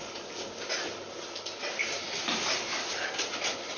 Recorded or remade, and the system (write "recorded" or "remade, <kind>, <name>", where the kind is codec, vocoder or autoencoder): recorded